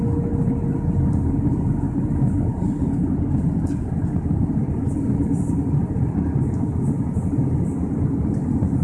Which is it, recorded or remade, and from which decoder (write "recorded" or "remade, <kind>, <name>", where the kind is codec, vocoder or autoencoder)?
recorded